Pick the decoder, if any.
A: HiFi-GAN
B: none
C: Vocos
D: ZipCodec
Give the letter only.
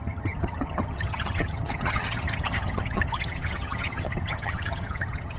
A